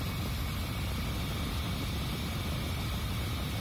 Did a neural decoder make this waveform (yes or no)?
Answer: no